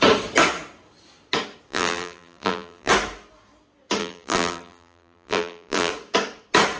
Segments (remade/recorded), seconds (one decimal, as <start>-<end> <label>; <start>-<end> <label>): 0.0-1.7 recorded; 1.7-2.9 remade; 2.9-4.0 recorded; 4.0-5.9 remade; 5.9-6.8 recorded